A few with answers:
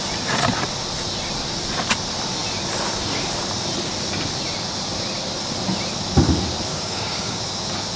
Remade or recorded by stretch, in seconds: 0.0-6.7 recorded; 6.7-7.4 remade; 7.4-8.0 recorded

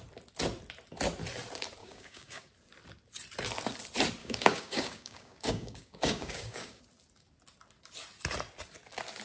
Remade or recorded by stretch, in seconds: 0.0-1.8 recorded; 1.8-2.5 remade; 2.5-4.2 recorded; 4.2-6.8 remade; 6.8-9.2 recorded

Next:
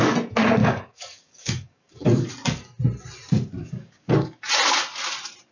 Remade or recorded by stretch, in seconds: 0.0-0.6 recorded; 0.6-2.3 remade; 2.3-3.6 recorded; 3.6-4.4 remade; 4.4-5.5 recorded

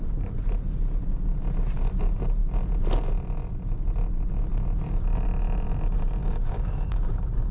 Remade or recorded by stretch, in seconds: 0.0-6.2 recorded; 6.2-7.5 remade

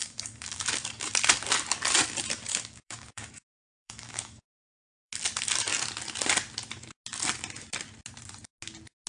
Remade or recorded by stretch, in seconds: 0.0-1.1 remade; 1.1-2.5 recorded; 2.5-5.1 remade; 5.1-9.1 recorded